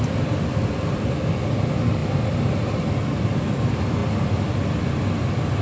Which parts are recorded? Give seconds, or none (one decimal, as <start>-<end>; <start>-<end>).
0.0-5.6

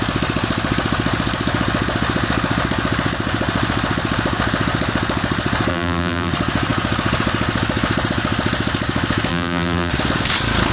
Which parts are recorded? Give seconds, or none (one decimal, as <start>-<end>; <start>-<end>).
0.0-5.7; 6.3-9.3; 9.9-10.7

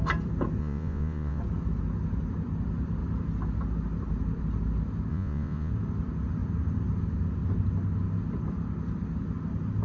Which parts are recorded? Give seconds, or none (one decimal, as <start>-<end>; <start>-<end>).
0.0-0.6; 1.4-5.1; 5.7-9.8

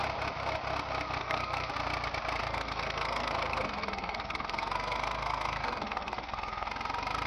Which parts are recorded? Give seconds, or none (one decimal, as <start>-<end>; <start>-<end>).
0.0-1.2; 1.7-2.4; 6.7-7.3

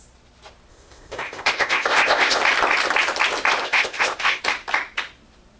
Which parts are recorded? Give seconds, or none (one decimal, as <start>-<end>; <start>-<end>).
0.0-0.7; 2.4-3.6; 4.4-5.6

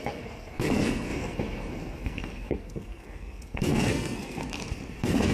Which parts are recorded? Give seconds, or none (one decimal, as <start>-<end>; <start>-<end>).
none